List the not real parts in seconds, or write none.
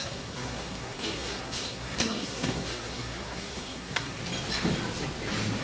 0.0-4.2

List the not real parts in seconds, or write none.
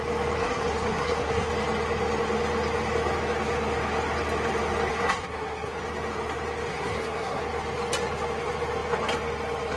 0.4-1.5; 4.9-5.8; 6.7-7.4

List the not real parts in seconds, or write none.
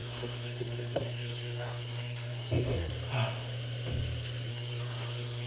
0.0-2.9; 4.5-5.5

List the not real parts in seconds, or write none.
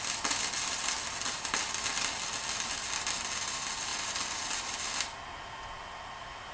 none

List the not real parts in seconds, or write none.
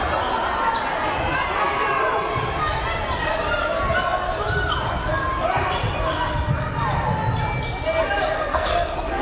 8.5-9.2